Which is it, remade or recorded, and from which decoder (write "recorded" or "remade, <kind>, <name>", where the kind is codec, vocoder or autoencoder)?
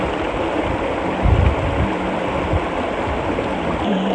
recorded